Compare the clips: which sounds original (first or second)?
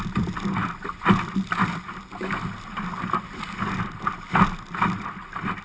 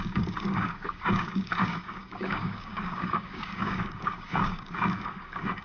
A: first